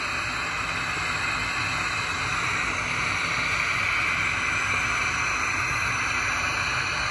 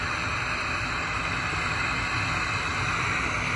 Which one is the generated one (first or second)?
second